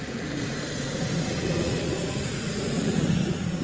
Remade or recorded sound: remade